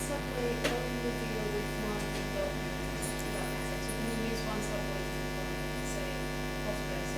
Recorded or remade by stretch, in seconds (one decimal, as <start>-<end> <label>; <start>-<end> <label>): 0.0-2.4 recorded; 2.4-3.1 remade; 3.1-7.2 recorded